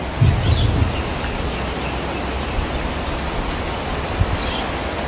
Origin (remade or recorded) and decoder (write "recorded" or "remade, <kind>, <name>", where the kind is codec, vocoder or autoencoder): recorded